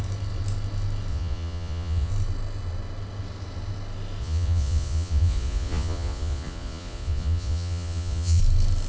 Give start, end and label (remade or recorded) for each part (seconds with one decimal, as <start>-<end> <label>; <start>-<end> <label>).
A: 0.0-1.1 recorded; 1.1-2.1 remade; 2.1-4.2 recorded; 4.2-8.4 remade; 8.4-8.9 recorded